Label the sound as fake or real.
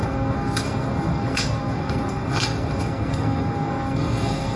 fake